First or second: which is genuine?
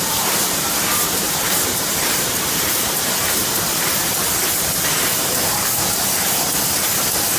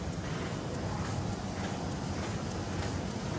second